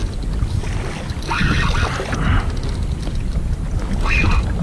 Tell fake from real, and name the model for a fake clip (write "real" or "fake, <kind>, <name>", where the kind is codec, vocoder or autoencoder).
real